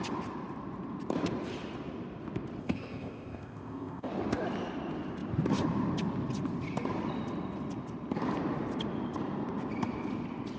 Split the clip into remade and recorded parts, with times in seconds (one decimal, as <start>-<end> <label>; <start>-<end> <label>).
0.0-2.6 recorded; 2.6-4.1 remade; 4.1-10.6 recorded